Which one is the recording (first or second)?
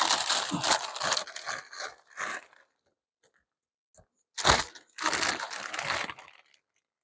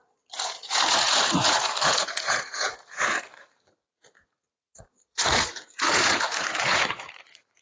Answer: first